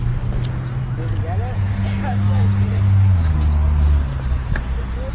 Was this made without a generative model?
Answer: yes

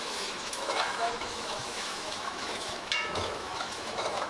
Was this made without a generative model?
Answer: no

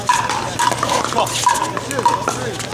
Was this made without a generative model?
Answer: yes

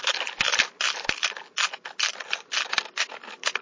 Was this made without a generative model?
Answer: yes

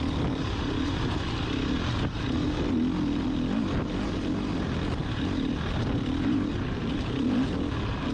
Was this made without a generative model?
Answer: yes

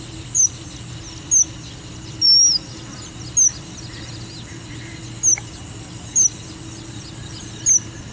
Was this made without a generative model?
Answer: yes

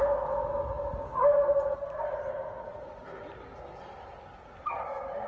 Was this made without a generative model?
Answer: yes